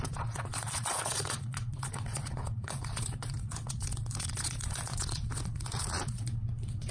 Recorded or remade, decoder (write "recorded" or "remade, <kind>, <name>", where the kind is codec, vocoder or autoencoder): remade, vocoder, Vocos